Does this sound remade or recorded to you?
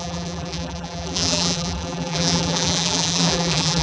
remade